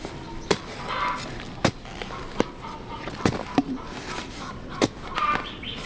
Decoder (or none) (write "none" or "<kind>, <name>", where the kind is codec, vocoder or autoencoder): none